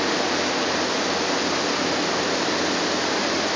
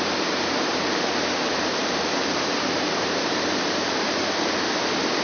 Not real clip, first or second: second